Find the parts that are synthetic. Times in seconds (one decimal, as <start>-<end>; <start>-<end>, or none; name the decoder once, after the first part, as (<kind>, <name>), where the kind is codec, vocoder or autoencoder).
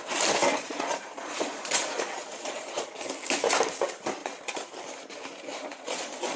0.5-3.0 (vocoder, Vocos); 4.2-4.7; 5.6-6.4